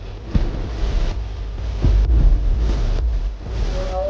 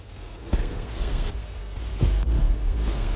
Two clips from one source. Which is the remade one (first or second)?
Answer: second